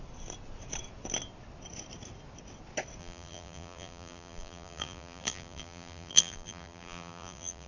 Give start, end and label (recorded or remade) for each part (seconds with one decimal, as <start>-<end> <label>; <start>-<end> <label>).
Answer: 0.0-3.0 recorded; 3.0-7.7 remade